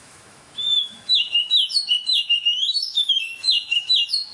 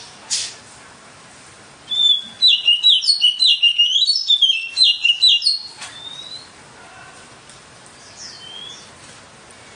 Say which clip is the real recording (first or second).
second